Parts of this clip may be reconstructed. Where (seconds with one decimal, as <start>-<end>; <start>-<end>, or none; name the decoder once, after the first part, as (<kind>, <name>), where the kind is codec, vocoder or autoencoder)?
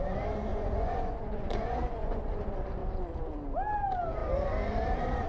0.5-2.4 (vocoder, Vocos)